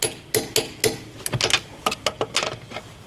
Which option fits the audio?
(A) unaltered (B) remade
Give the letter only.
A